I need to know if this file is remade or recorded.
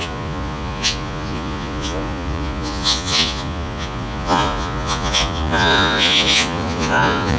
remade